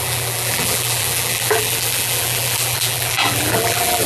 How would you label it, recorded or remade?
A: remade